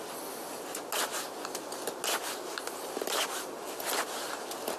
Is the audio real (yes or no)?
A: yes